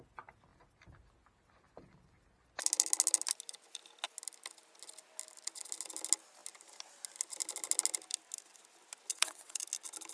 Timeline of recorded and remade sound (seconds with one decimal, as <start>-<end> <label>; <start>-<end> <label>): 0.0-9.1 recorded; 9.1-9.6 remade; 9.6-10.1 recorded